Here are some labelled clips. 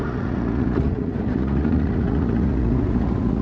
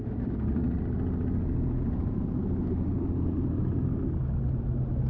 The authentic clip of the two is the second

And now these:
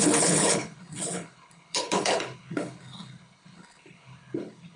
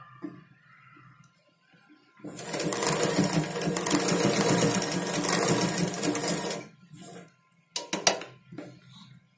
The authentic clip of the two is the second